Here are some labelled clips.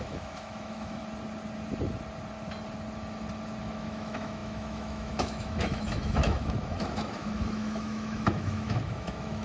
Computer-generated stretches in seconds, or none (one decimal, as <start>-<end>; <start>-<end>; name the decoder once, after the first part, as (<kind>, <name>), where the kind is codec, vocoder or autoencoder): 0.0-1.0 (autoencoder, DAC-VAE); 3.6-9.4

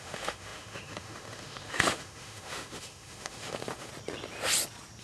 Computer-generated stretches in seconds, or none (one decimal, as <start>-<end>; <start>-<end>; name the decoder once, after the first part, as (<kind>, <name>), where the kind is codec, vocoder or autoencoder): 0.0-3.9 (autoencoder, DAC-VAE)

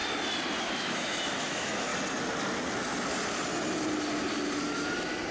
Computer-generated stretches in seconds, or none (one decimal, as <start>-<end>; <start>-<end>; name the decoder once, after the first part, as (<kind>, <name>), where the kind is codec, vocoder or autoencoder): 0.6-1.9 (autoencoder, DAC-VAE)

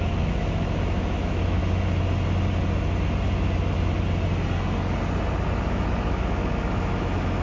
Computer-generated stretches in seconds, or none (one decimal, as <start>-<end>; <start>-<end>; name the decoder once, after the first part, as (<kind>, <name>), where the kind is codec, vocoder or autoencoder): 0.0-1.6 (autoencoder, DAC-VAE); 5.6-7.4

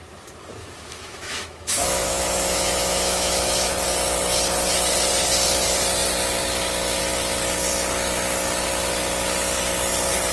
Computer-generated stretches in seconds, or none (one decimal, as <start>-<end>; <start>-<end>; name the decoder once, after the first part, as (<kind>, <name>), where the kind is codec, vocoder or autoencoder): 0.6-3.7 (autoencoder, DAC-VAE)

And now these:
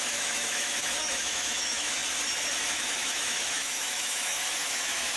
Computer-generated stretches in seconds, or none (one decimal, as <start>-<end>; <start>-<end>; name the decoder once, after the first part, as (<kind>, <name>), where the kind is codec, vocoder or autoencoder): 0.0-2.0 (autoencoder, DAC-VAE); 2.7-5.2